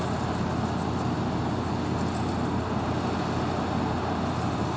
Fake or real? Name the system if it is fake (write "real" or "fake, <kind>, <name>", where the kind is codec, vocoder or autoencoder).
real